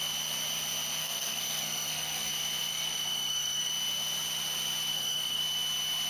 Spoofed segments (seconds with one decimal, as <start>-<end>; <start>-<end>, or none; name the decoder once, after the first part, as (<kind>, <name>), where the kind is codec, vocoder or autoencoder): 1.0-2.3 (codec, SNAC); 2.7-3.7; 4.9-5.4